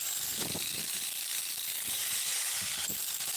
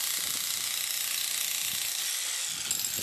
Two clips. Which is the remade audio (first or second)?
first